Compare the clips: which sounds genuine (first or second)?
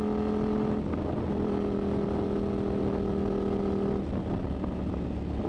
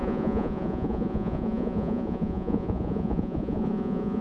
first